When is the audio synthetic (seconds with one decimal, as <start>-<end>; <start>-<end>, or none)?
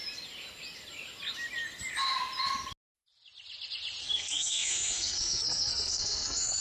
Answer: 4.0-6.6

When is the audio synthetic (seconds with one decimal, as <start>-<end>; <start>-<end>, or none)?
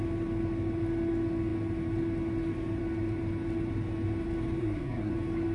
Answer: 4.6-5.1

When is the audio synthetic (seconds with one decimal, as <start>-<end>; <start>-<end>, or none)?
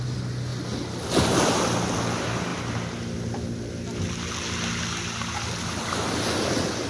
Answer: none